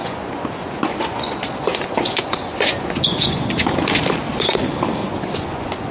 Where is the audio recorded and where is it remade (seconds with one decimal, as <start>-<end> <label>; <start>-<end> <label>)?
0.0-3.5 remade; 3.5-5.0 recorded; 5.0-5.9 remade